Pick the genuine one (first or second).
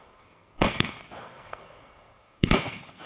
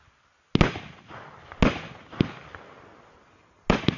second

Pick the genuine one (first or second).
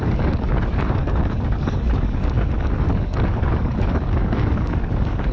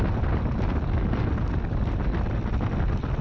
second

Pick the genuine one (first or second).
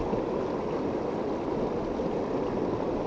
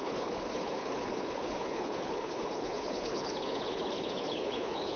first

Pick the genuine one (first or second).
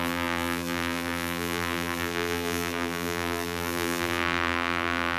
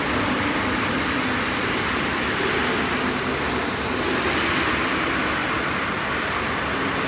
second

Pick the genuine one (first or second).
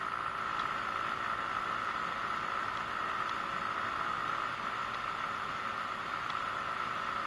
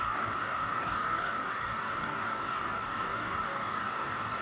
first